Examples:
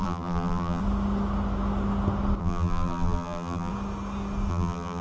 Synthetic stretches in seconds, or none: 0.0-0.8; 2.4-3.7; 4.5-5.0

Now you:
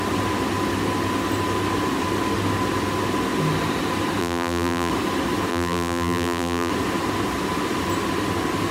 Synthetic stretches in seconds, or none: 4.2-4.9; 5.5-6.7

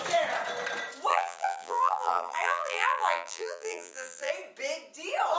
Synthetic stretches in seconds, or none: 1.1-4.3

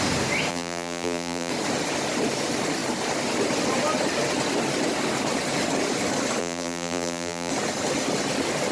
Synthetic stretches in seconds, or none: 0.5-1.5; 6.4-7.5

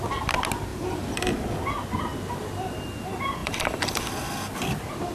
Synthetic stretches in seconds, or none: 3.4-4.0